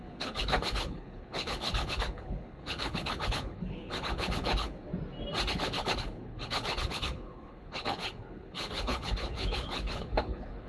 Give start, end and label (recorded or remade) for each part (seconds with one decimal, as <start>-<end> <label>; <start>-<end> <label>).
0.0-4.9 remade; 4.9-5.5 recorded; 5.5-10.7 remade